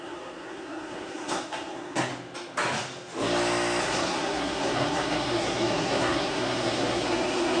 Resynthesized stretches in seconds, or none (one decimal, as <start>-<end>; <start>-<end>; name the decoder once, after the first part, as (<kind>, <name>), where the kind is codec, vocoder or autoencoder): 0.0-2.1 (codec, SNAC); 3.8-7.6